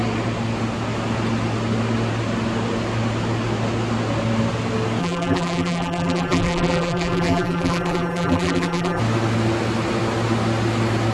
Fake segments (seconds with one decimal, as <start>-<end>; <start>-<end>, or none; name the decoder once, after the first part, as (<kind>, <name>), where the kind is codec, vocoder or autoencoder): 5.0-9.0 (vocoder, BigVGAN v2)